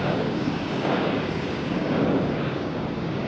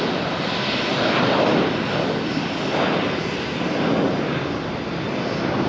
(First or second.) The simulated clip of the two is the first